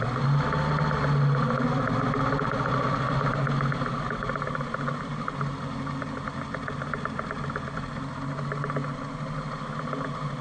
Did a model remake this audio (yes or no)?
no